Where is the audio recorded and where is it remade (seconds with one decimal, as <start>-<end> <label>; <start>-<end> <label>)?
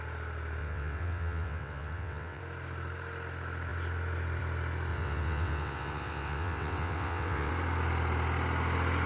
0.0-0.6 recorded; 0.6-2.4 remade; 2.4-4.9 recorded; 4.9-7.5 remade; 7.5-9.1 recorded